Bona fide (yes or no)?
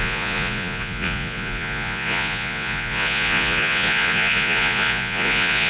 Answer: no